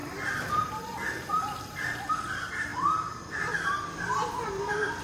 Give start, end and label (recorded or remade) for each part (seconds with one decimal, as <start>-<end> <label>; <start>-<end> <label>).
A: 0.0-5.0 recorded